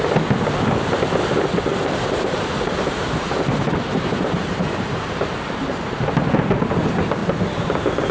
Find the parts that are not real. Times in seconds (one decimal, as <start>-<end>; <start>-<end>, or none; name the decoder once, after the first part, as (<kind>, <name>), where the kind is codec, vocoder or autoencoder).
1.7-5.7 (vocoder, BigVGAN v2)